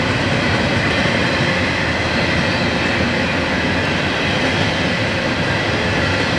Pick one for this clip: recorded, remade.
recorded